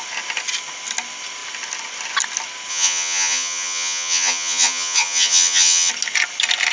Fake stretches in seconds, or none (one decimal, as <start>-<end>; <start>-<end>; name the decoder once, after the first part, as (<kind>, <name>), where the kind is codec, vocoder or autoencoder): 2.7-5.9 (vocoder, HiFi-GAN)